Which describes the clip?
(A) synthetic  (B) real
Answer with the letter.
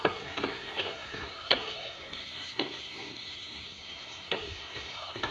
A